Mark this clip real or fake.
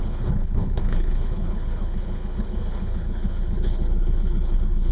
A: fake